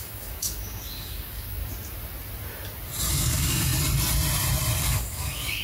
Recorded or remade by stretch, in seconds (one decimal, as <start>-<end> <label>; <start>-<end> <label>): 0.0-1.6 remade; 1.6-3.1 recorded; 3.1-3.7 remade; 3.7-4.8 recorded; 4.8-5.6 remade